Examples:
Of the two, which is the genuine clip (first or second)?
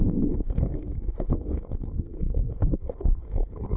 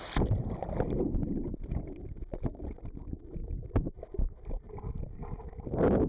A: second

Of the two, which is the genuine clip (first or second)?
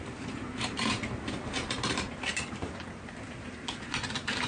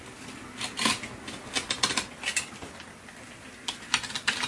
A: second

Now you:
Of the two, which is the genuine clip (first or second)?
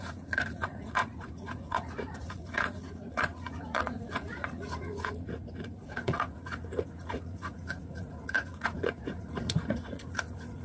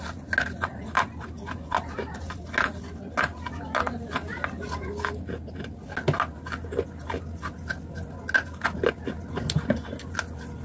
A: second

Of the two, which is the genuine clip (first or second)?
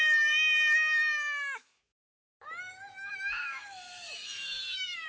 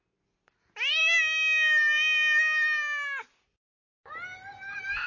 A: second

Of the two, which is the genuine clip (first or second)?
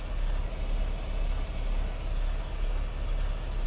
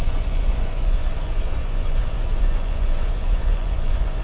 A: first